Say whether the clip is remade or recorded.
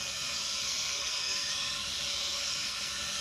remade